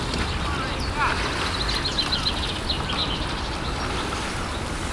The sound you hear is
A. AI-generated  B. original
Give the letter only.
B